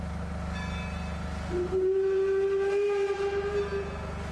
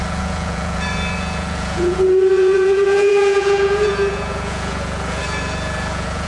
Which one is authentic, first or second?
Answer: first